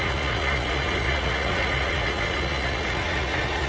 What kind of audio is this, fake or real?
fake